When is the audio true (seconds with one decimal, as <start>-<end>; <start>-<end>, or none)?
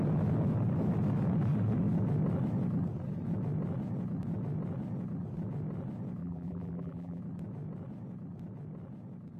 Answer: 0.0-6.2; 7.2-9.4